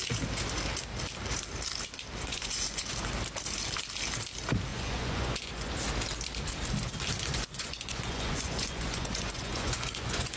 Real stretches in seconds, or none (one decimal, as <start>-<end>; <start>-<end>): 0.0-2.3; 2.9-4.7; 5.7-7.3